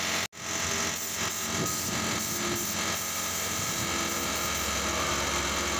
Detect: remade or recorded recorded